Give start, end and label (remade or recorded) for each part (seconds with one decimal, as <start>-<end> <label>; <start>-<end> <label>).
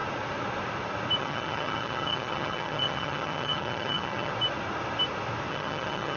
0.0-1.2 recorded; 1.2-4.3 remade; 4.3-5.5 recorded; 5.5-6.2 remade